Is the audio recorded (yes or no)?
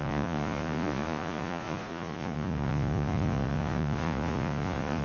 no